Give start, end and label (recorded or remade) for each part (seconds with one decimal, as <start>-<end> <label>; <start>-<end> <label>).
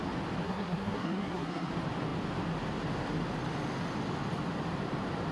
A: 0.0-0.4 recorded; 0.4-1.7 remade; 1.7-5.3 recorded